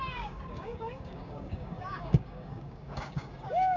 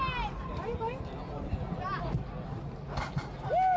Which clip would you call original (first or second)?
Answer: second